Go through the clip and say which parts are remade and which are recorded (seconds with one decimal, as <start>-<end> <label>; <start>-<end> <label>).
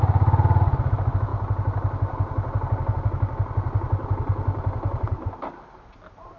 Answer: 0.0-6.4 recorded